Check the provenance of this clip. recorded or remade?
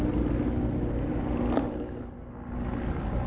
recorded